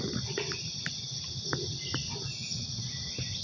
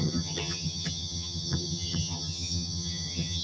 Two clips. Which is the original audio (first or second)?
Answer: first